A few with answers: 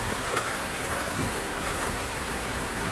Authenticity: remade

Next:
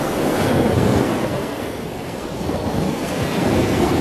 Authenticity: remade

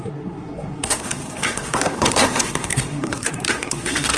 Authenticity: remade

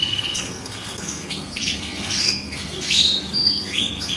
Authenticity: remade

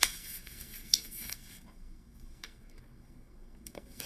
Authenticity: remade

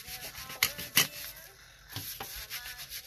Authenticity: recorded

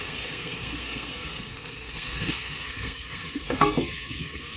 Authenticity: remade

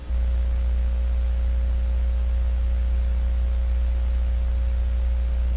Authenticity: recorded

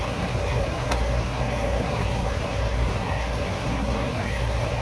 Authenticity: remade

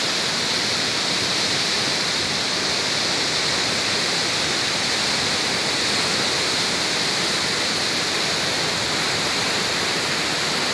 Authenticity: recorded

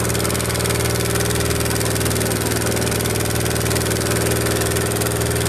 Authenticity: recorded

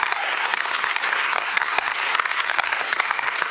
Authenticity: remade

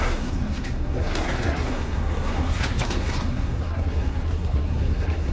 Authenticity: remade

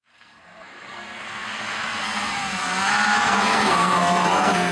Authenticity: remade